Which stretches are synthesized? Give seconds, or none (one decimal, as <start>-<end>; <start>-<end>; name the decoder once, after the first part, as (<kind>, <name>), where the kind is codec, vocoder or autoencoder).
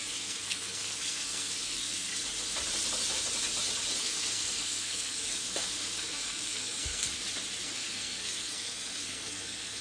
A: 0.0-2.1 (codec, SNAC); 4.0-7.1; 7.6-9.8